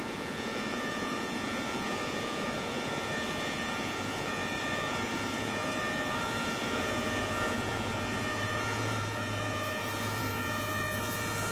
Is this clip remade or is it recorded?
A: remade